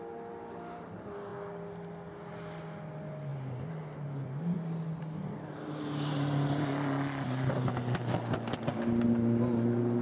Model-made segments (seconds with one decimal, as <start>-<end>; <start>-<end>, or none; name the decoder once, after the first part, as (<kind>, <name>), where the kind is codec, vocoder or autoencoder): none